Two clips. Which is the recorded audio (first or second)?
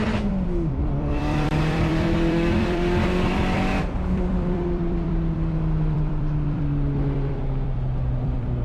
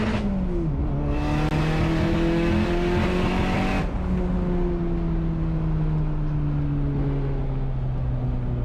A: second